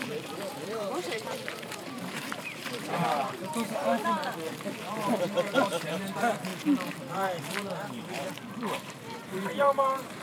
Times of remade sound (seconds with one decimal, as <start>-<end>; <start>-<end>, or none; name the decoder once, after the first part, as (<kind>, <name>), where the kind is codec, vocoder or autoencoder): 0.0-3.9 (vocoder, BigVGAN v2); 4.8-6.5; 7.4-10.2